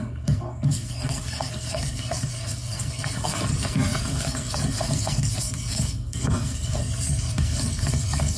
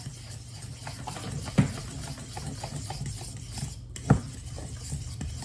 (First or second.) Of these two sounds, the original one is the second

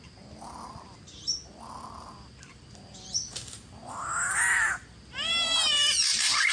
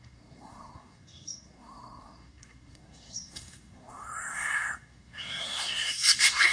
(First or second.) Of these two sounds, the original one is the first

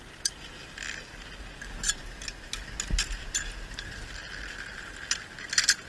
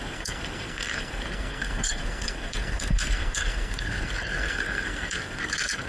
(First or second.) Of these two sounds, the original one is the first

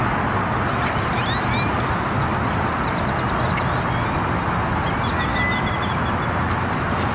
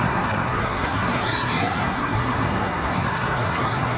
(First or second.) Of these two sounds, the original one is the first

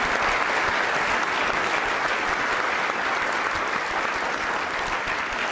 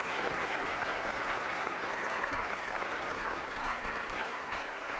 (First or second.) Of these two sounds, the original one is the first